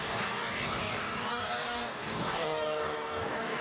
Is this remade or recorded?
remade